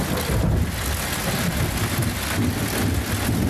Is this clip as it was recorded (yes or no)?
yes